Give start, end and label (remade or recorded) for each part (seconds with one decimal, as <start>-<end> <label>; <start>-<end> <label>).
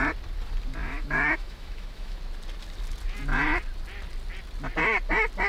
0.0-0.8 recorded; 0.8-2.2 remade; 2.2-5.5 recorded